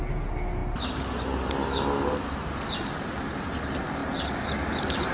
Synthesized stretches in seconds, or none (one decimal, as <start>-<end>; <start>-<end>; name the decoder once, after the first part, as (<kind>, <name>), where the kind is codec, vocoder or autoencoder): none